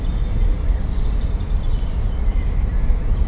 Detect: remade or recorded remade